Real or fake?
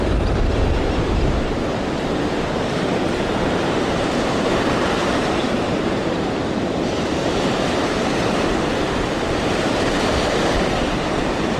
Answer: fake